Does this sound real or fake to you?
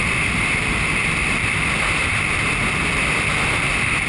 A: fake